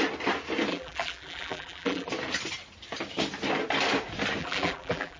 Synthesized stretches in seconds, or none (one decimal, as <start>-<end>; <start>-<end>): 0.7-2.1; 4.4-5.2